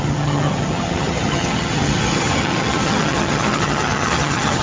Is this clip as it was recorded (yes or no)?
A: no